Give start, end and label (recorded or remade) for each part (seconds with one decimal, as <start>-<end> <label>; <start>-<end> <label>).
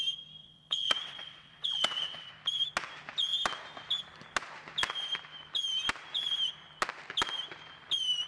0.0-0.4 recorded; 0.4-2.3 remade; 2.3-8.3 recorded